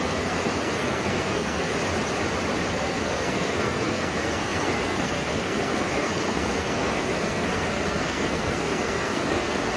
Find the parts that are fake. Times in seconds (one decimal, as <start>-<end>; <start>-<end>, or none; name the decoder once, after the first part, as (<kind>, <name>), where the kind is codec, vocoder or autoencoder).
0.0-1.7 (codec, SNAC); 2.7-9.8